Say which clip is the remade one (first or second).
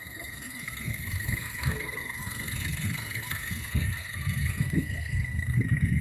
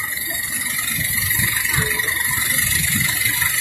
first